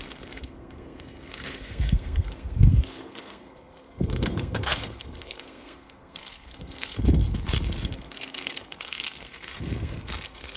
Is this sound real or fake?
fake